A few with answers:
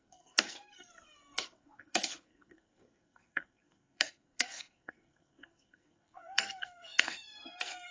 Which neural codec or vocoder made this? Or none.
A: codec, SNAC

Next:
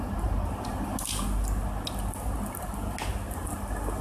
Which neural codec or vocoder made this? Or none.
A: none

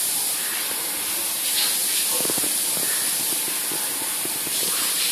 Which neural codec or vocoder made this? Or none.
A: none